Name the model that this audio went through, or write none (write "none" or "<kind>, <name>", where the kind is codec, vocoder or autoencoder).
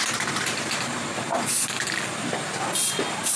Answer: none